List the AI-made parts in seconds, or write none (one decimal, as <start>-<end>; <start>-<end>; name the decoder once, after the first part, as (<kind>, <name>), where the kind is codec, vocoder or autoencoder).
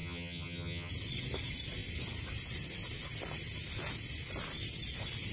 0.0-0.9 (vocoder, HiFi-GAN)